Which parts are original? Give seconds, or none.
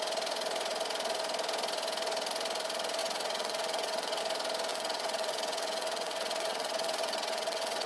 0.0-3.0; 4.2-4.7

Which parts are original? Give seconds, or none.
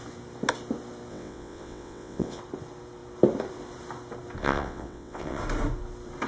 0.0-1.1; 2.4-4.4; 5.4-6.3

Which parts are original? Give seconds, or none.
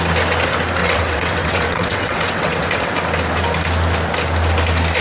0.0-0.8; 2.9-5.0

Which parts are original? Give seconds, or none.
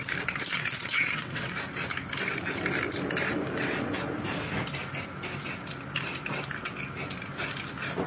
0.0-0.5; 1.5-8.1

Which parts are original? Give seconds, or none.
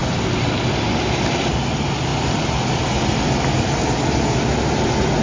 0.0-5.2